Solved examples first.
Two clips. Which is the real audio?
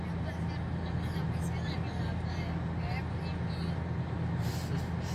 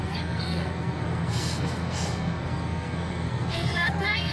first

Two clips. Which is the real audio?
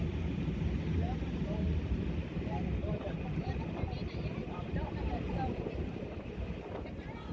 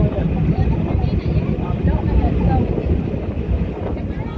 second